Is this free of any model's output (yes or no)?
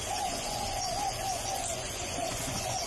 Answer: no